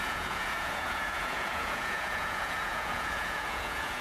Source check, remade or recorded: remade